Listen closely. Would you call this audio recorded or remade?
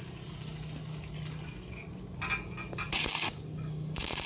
recorded